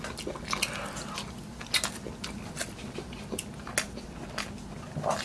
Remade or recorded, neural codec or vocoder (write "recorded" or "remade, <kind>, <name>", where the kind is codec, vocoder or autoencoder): recorded